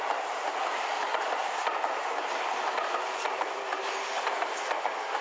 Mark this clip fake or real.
real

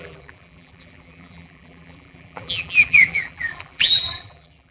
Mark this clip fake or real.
fake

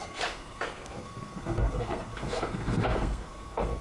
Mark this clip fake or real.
fake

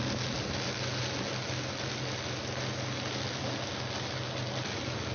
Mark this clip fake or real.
real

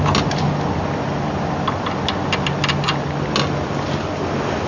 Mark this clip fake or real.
real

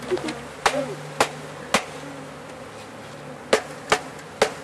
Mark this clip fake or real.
real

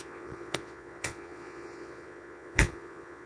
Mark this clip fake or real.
fake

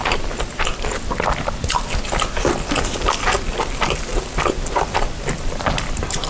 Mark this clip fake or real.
real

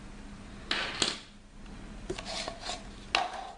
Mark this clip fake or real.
real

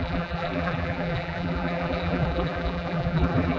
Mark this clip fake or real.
fake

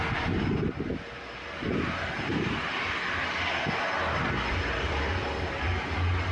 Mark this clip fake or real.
real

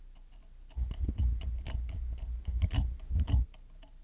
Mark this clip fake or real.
real